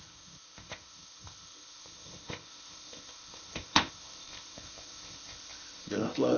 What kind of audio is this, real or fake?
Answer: fake